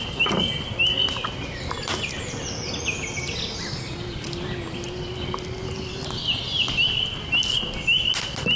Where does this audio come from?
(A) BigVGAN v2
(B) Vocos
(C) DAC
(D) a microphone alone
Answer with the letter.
D